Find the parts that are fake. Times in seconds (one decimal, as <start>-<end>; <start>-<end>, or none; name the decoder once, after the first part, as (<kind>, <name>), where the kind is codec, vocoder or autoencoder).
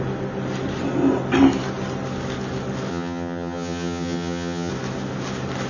2.9-4.7 (vocoder, HiFi-GAN)